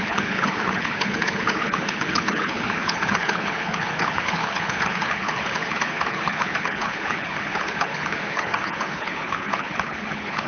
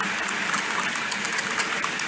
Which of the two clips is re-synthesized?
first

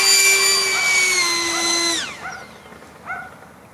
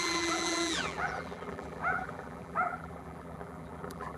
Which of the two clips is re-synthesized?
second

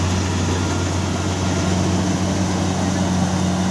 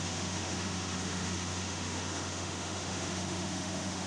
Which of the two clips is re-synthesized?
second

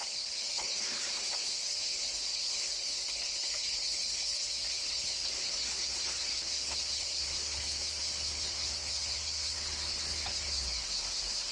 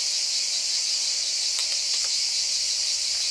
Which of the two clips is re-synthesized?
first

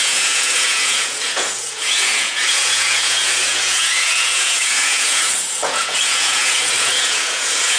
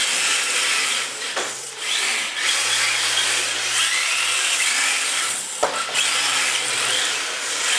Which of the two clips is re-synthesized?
first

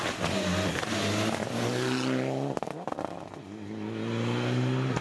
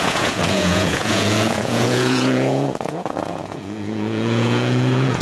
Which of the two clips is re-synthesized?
second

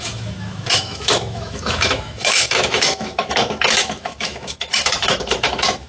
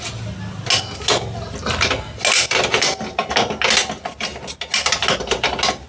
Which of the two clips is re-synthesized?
first